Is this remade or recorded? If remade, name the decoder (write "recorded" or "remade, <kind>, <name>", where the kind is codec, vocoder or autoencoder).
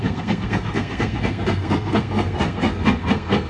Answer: remade, codec, SNAC